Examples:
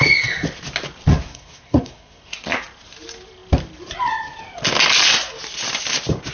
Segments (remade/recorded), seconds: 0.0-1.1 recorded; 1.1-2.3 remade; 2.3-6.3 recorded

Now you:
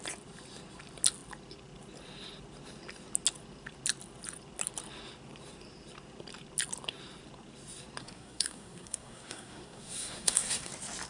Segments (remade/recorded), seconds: 0.0-8.0 recorded; 8.0-10.7 remade; 10.7-11.1 recorded

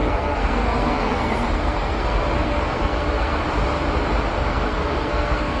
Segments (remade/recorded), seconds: 0.0-3.4 remade; 3.4-4.5 recorded; 4.5-5.6 remade

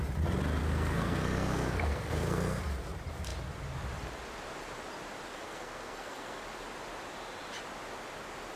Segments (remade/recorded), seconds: 0.0-0.6 recorded; 0.6-2.6 remade; 2.6-5.3 recorded; 5.3-6.4 remade; 6.4-8.6 recorded